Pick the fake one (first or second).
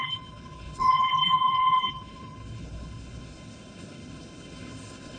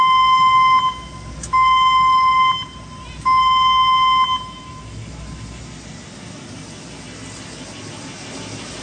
first